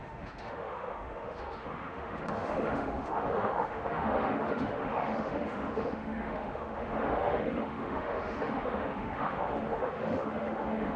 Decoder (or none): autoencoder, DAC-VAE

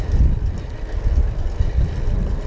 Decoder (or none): none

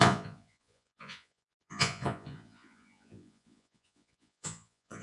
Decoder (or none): vocoder, Vocos